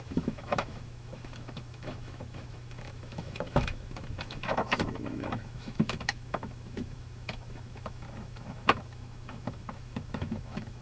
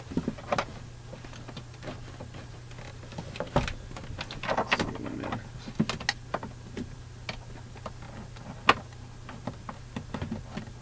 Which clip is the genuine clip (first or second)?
second